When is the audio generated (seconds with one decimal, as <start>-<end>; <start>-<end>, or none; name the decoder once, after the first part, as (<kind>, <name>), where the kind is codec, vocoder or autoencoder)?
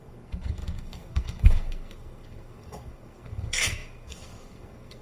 0.0-5.0 (codec, SNAC)